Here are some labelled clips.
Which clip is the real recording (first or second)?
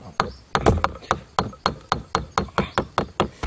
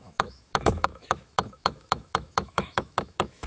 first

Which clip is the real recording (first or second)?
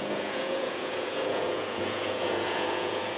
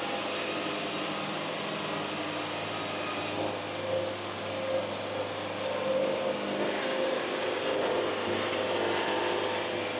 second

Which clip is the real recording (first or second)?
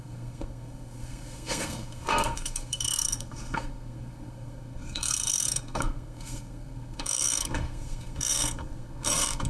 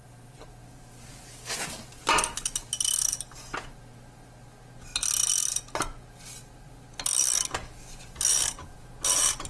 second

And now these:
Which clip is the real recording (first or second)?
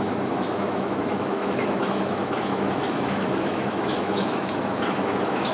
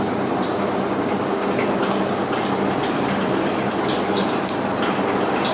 second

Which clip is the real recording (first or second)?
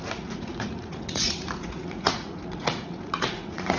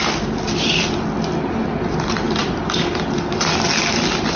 second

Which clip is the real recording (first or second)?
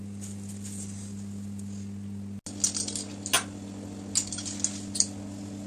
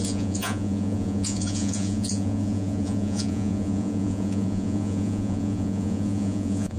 first